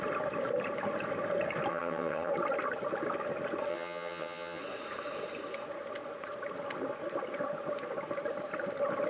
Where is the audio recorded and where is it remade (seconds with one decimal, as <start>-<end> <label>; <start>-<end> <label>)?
0.0-1.7 recorded; 1.7-2.3 remade; 2.3-3.7 recorded; 3.7-4.6 remade; 4.6-9.1 recorded